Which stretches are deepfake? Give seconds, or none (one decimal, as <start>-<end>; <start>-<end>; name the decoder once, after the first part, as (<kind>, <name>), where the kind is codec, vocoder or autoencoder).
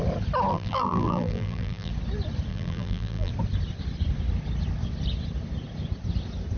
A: 0.5-1.9 (vocoder, BigVGAN v2); 2.5-3.3